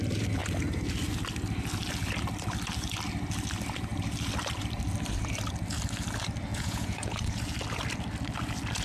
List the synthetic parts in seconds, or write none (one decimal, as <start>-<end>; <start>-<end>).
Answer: 6.5-7.4